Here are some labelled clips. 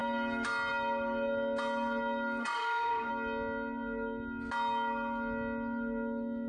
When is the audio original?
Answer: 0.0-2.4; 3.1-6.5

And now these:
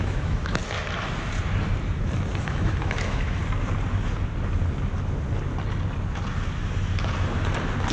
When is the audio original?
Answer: 0.6-2.4; 3.4-7.9

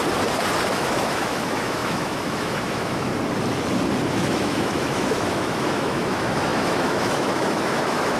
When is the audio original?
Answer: 0.0-0.7; 3.1-4.1

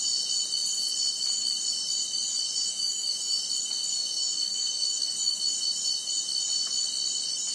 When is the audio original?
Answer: 0.0-2.6; 3.4-4.0; 5.4-7.5